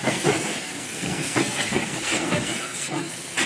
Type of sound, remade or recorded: remade